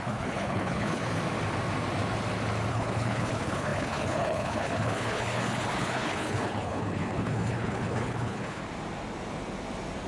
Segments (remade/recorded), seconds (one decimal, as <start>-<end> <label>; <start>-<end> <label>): 0.0-1.0 remade; 1.0-2.7 recorded; 2.7-8.6 remade; 8.6-10.1 recorded